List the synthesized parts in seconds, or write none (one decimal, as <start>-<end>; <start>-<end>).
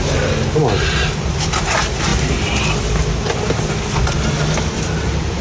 none